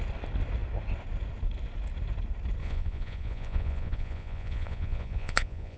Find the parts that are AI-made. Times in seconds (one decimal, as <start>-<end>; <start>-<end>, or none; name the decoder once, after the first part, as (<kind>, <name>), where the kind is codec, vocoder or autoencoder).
2.6-5.8 (vocoder, Vocos)